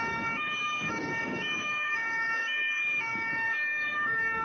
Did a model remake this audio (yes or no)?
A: yes